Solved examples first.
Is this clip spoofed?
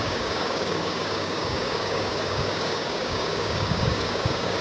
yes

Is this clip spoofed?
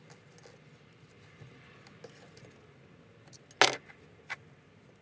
no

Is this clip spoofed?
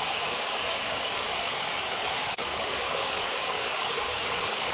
yes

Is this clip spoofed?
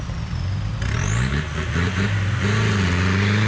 no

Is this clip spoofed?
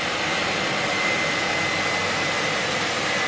no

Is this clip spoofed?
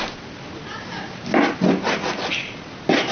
no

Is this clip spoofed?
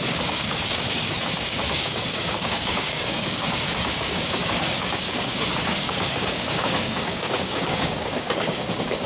yes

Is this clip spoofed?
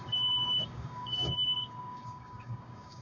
yes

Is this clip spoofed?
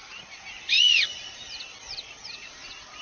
no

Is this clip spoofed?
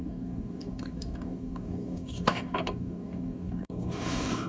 yes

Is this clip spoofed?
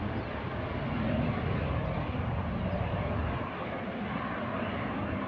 no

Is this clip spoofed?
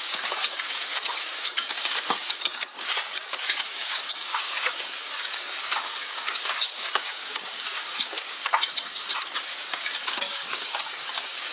yes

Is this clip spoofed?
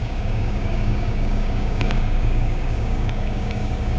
yes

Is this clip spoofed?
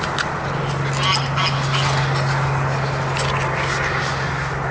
no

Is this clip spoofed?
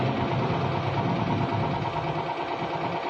no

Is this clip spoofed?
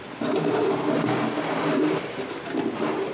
no